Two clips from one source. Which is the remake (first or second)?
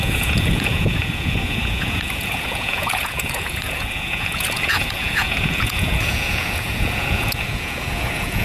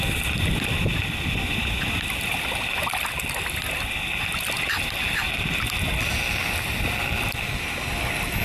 first